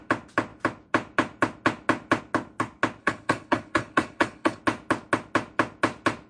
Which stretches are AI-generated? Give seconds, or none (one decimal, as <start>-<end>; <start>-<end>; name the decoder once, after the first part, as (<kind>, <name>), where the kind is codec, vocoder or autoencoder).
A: 3.0-4.6 (codec, HILCodec)